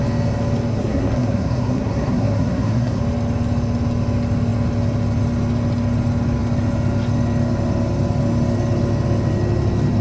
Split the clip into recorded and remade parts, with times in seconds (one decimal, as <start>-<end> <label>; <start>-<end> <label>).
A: 0.0-0.7 recorded; 0.7-3.0 remade; 3.0-10.0 recorded